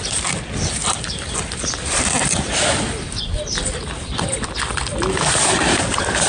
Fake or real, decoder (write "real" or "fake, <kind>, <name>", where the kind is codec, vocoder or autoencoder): fake, vocoder, BigVGAN v2